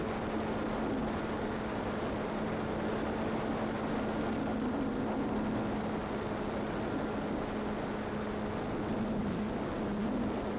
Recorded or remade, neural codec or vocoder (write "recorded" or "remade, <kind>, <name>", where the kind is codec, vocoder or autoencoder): recorded